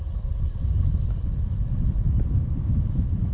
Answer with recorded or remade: remade